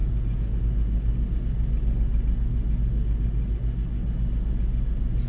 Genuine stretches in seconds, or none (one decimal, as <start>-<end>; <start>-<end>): 0.6-5.3